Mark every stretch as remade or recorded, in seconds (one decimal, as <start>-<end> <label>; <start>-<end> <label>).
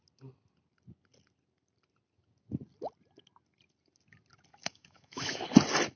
0.0-4.6 recorded; 4.6-5.4 remade; 5.4-6.0 recorded